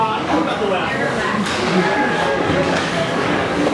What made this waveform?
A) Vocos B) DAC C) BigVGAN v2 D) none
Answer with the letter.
B